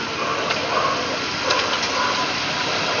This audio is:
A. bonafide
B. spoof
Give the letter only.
B